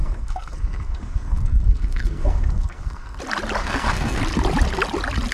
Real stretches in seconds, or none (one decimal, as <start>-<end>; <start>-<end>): 3.2-3.6; 4.2-5.3